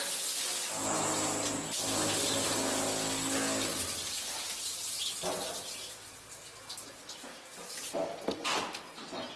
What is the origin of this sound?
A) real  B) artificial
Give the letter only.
A